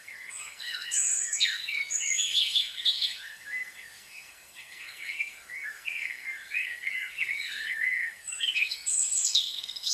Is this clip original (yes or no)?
no